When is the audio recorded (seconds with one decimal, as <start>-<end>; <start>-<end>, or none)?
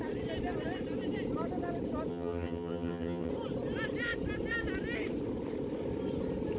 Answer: 0.0-2.1; 3.3-6.6